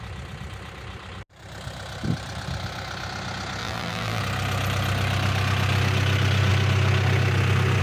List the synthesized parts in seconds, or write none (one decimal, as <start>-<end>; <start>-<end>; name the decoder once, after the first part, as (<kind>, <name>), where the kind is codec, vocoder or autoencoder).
3.6-4.2 (vocoder, BigVGAN v2)